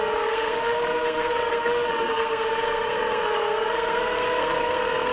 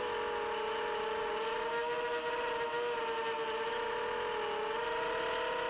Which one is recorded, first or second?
second